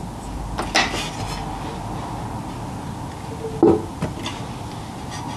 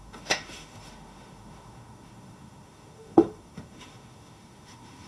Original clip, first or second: first